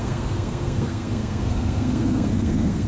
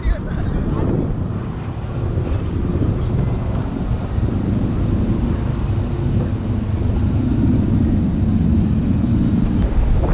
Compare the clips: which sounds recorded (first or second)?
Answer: second